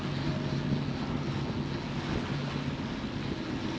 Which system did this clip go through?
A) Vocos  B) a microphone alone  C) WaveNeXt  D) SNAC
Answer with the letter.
B